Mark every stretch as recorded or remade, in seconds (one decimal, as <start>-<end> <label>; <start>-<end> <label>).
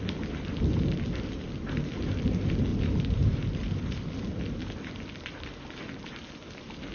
0.0-2.7 recorded; 2.7-4.2 remade; 4.2-6.9 recorded